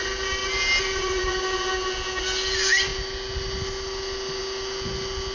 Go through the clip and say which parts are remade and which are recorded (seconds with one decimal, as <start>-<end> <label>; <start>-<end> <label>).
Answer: 0.0-5.3 recorded